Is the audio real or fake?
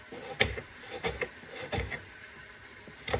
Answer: real